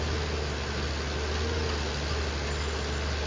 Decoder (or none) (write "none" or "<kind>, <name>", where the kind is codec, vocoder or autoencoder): none